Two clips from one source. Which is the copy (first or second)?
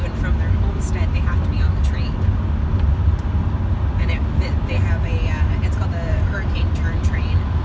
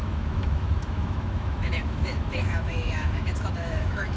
second